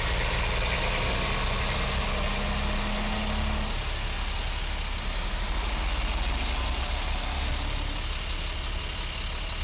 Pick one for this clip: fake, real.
real